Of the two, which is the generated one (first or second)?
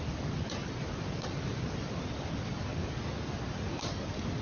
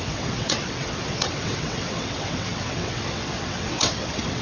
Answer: second